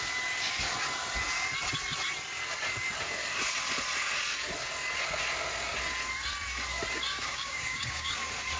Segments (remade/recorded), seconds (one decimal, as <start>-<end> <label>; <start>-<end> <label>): 0.0-7.1 recorded; 7.1-8.1 remade; 8.1-8.6 recorded